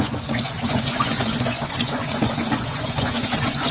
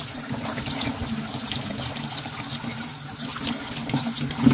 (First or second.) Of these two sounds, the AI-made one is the first